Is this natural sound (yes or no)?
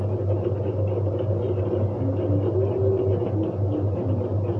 yes